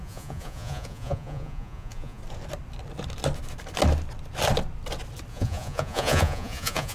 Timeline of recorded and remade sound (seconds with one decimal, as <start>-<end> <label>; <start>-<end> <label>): 0.0-2.2 remade; 2.2-5.3 recorded; 5.3-6.9 remade